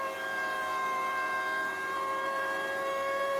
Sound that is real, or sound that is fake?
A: fake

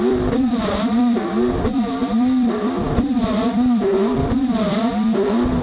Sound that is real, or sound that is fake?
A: fake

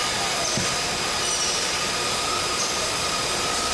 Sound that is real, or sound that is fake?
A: fake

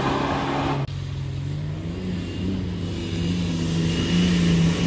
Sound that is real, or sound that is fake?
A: real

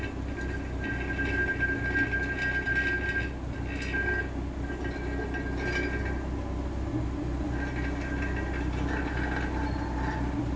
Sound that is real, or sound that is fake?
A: real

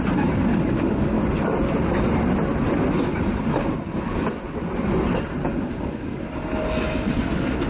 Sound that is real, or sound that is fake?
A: real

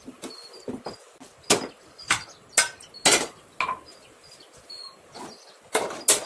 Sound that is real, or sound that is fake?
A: real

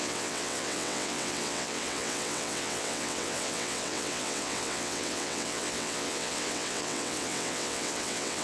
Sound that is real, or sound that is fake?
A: fake